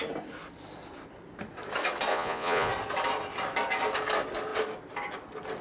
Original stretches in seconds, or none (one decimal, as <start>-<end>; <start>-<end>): 0.0-2.1; 2.7-5.6